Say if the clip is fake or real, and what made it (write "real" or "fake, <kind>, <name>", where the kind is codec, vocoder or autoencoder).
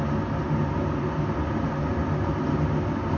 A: real